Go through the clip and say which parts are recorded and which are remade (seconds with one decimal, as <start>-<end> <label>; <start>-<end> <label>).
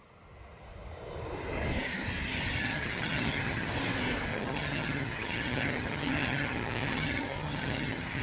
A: 0.0-2.6 recorded; 2.6-3.7 remade; 3.7-4.3 recorded; 4.3-8.2 remade